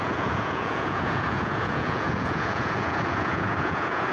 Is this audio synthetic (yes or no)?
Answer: yes